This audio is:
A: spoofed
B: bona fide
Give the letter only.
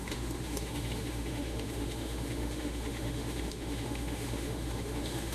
A